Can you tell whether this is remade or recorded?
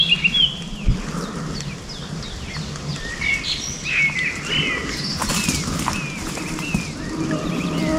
recorded